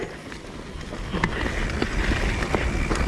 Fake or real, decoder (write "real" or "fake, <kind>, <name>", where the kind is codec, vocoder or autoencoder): real